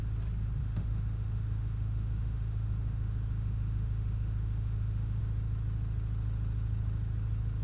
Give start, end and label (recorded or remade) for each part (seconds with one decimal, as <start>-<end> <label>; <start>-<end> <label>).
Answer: 0.0-0.6 recorded; 0.6-5.2 remade; 5.2-7.6 recorded